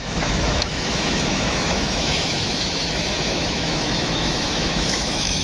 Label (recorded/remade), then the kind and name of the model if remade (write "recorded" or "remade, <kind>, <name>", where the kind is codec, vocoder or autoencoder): remade, autoencoder, DAC-VAE